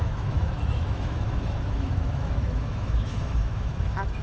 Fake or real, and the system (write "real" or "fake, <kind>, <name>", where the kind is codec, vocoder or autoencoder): fake, autoencoder, DAC-VAE